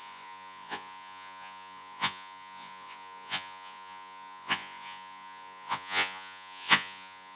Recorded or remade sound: remade